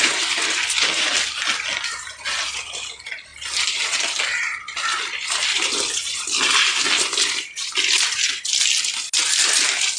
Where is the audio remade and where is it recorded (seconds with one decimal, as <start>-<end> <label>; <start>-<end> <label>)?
0.0-10.0 recorded